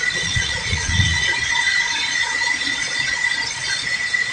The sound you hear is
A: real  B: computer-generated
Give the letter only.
B